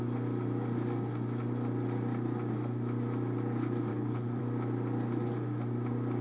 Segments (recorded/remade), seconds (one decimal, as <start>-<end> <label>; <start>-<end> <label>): 0.0-3.9 recorded; 3.9-4.4 remade; 4.4-6.2 recorded